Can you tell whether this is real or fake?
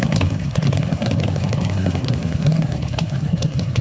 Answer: fake